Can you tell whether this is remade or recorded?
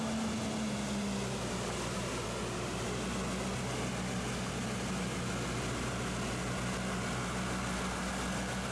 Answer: recorded